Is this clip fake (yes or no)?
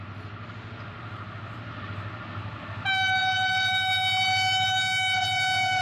no